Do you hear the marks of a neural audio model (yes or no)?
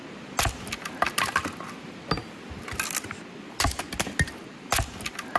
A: no